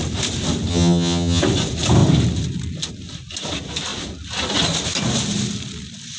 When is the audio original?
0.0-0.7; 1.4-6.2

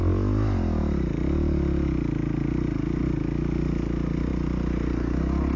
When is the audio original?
0.0-5.6